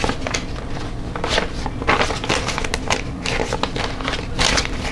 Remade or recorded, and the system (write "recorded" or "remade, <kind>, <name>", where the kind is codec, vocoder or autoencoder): recorded